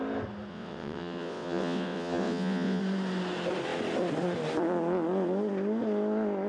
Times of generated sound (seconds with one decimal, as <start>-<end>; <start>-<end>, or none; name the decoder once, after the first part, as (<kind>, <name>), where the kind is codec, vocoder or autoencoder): 0.5-2.8 (vocoder, WaveNeXt)